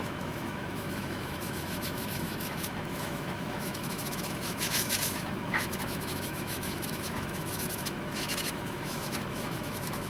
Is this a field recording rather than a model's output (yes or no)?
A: no